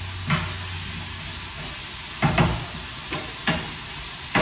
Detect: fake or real real